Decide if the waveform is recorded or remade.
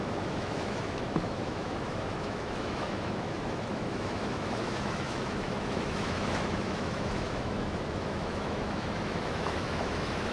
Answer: remade